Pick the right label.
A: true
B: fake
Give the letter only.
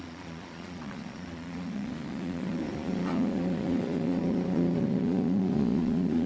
B